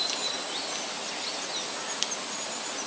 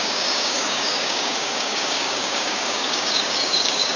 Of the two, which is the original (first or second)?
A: first